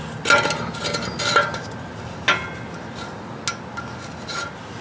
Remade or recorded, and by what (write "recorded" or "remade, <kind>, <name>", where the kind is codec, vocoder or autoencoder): recorded